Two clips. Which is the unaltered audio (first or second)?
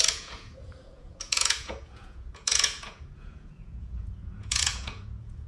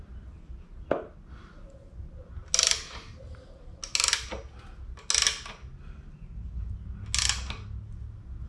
second